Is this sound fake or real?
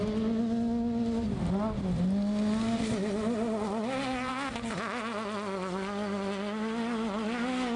real